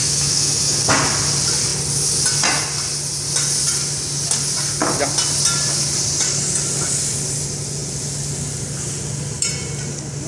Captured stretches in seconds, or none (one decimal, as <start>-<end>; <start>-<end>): 0.8-10.3